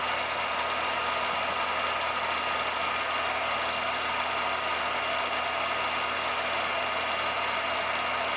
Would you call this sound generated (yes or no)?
no